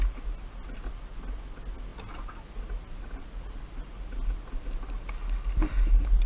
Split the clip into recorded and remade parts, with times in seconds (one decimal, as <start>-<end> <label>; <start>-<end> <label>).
0.0-6.3 recorded